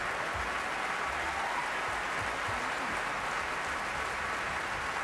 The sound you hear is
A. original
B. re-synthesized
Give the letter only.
A